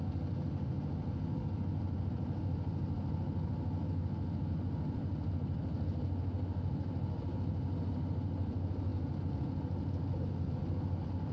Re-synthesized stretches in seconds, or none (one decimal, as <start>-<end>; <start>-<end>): none